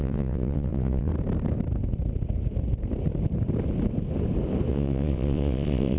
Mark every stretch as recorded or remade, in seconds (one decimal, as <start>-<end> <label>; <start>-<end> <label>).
0.0-1.1 remade; 1.1-4.7 recorded; 4.7-6.0 remade